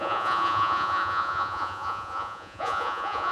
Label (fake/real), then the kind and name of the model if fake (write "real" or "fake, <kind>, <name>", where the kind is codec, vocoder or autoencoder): fake, vocoder, Vocos